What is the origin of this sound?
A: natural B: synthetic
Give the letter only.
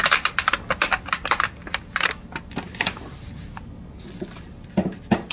A